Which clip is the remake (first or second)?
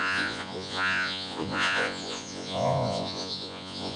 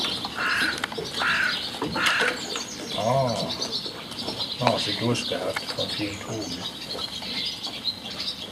first